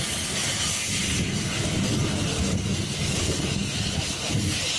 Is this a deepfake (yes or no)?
no